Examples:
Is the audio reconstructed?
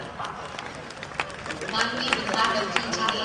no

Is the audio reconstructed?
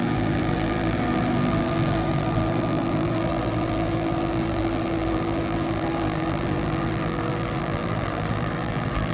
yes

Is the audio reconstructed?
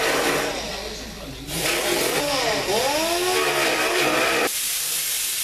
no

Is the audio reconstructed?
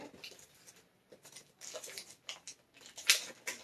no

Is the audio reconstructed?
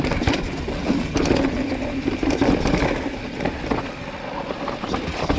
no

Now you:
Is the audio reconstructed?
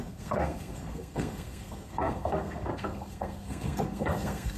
yes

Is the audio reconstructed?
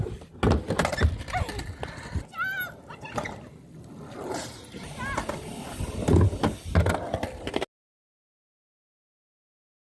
no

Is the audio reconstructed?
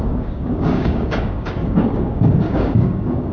yes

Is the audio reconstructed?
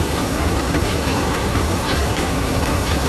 yes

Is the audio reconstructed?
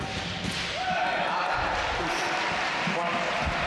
no